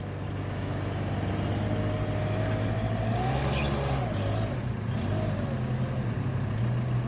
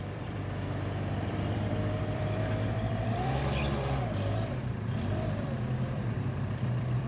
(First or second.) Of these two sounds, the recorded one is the first